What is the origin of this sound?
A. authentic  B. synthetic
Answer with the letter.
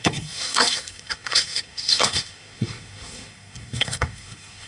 B